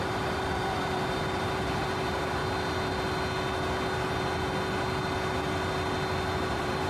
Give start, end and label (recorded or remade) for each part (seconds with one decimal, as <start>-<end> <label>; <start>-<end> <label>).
0.0-2.4 remade; 2.4-6.5 recorded; 6.5-6.9 remade

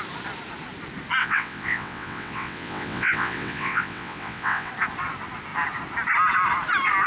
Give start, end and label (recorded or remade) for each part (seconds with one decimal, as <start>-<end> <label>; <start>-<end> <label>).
0.0-1.2 recorded; 1.2-4.7 remade; 4.7-7.1 recorded